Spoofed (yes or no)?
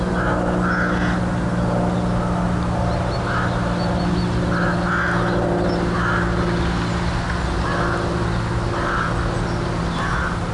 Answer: no